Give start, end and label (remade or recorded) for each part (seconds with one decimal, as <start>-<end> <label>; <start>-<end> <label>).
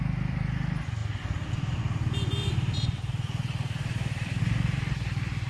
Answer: 0.0-1.0 recorded; 1.0-1.8 remade; 1.8-2.4 recorded; 2.4-4.4 remade; 4.4-5.5 recorded